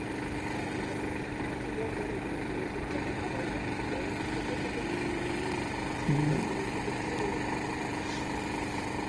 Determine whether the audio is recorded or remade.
recorded